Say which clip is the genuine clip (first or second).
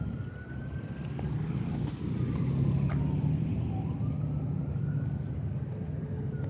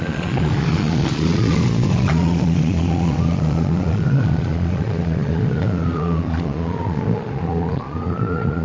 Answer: first